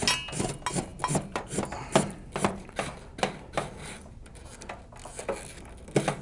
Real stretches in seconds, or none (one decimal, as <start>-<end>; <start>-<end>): 0.0-6.2